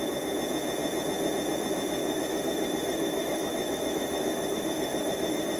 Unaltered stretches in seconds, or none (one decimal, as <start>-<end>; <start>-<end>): 0.0-2.0